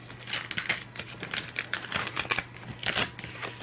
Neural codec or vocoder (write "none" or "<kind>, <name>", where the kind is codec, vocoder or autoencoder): none